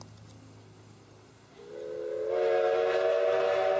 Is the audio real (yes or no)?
yes